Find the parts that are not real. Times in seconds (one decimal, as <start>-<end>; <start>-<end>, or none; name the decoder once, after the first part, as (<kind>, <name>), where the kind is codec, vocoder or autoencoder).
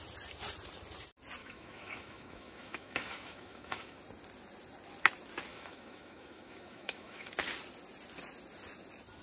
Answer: 1.4-4.0 (autoencoder, DAC-VAE); 5.5-7.3